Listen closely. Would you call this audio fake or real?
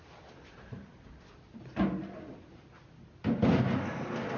real